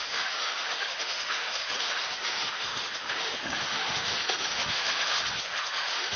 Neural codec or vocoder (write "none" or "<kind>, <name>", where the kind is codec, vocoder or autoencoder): autoencoder, DAC-VAE